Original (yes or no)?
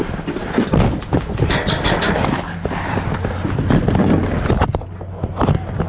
yes